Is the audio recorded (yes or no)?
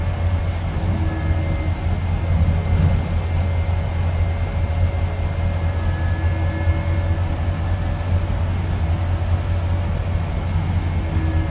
yes